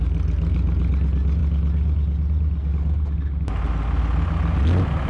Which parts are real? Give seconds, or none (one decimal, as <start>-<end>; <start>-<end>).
0.0-5.1